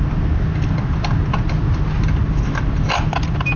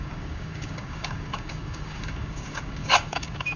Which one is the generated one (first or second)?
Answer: second